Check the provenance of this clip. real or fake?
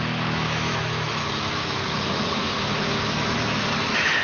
fake